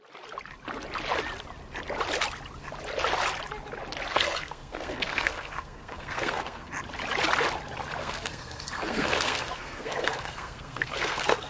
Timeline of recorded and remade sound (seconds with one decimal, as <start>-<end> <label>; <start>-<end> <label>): 0.0-4.1 recorded; 4.1-6.7 remade; 6.7-8.0 recorded; 8.0-11.5 remade